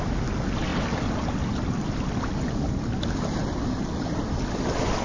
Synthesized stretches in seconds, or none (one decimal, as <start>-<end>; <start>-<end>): none